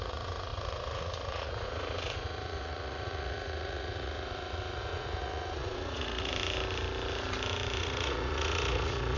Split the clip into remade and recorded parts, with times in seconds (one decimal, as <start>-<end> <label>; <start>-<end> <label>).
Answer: 0.0-6.3 remade; 6.3-7.8 recorded; 7.8-9.2 remade

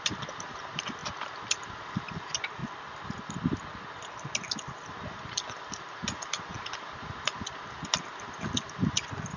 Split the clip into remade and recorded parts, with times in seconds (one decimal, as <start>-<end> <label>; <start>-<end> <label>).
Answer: 0.0-9.4 recorded